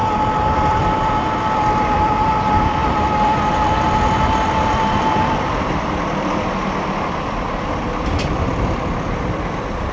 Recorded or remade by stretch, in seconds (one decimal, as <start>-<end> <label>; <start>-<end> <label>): 0.0-0.5 recorded; 0.5-9.9 remade